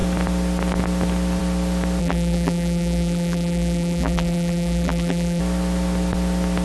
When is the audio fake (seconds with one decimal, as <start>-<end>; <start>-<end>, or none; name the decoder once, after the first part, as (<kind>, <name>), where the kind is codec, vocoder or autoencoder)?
2.0-5.4 (vocoder, BigVGAN v2)